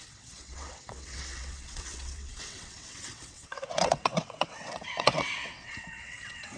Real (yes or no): no